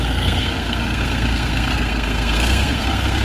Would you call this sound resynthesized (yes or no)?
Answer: yes